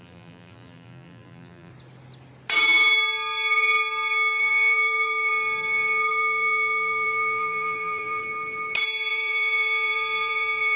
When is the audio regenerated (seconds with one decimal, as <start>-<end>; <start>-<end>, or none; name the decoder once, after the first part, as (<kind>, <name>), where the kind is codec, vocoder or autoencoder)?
0.0-1.7 (vocoder, BigVGAN v2); 4.4-5.3; 6.1-8.2; 9.1-10.8